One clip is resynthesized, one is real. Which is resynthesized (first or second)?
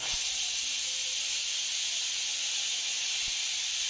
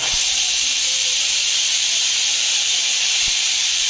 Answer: second